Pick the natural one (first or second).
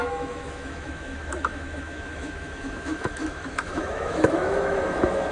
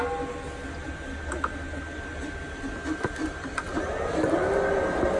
second